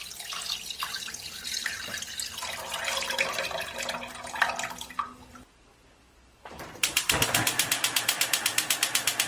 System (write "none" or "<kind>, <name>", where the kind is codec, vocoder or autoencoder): none